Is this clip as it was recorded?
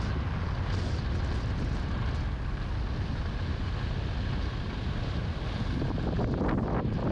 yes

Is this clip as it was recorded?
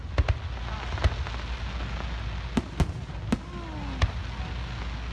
yes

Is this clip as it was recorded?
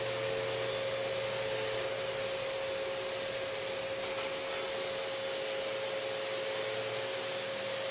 yes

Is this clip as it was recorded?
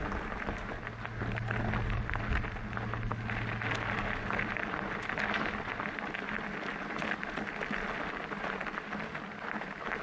yes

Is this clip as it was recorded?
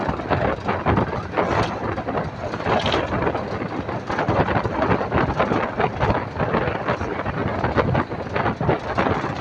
yes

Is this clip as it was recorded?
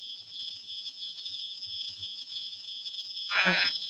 no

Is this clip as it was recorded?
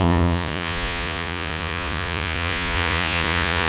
no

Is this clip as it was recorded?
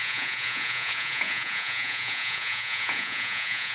no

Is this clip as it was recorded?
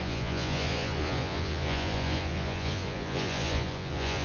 no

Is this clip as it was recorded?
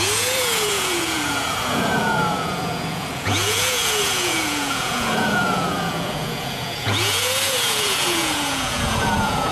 no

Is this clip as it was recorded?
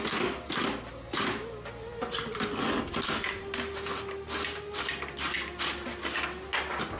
yes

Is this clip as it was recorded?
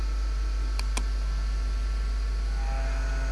yes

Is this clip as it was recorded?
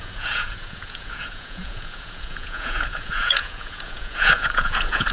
no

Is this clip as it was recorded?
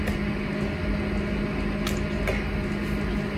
yes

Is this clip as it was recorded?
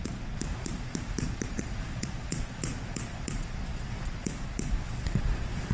no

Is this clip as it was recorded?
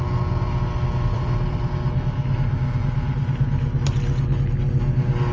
yes